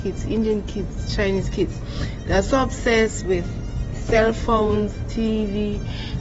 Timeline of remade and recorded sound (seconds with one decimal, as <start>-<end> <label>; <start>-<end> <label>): 0.0-3.9 recorded; 3.9-5.1 remade; 5.1-6.2 recorded